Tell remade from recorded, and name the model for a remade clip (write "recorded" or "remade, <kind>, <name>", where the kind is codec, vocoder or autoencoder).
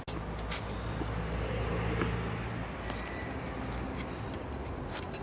recorded